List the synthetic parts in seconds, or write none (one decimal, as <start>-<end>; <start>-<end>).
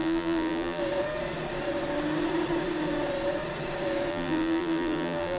0.0-0.8; 4.1-5.4